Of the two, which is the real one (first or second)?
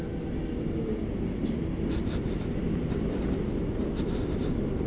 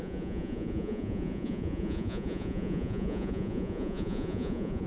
first